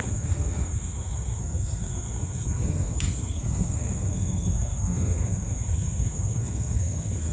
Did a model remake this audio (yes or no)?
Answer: yes